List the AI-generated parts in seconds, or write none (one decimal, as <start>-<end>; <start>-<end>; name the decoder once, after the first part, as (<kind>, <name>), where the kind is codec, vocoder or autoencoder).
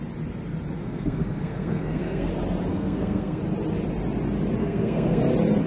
0.8-2.3 (codec, SNAC); 2.7-3.4; 4.6-5.2